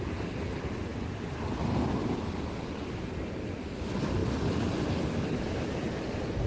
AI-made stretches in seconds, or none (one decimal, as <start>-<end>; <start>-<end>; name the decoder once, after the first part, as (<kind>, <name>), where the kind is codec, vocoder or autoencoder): none